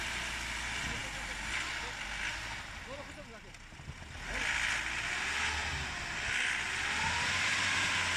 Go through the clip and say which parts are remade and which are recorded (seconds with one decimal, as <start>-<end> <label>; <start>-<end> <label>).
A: 0.0-8.2 recorded